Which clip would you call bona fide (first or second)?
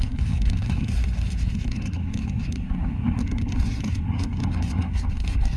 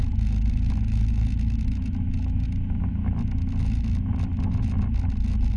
second